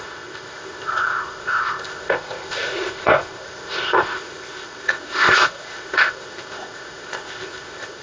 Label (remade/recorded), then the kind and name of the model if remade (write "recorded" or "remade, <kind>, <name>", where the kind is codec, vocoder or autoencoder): remade, codec, ZipCodec